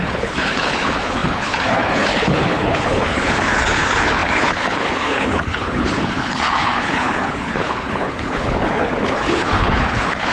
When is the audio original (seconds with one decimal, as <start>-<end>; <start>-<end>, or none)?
none